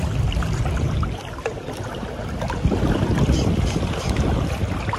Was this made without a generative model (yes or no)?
yes